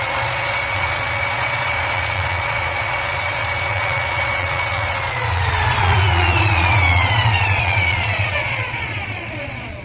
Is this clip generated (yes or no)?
yes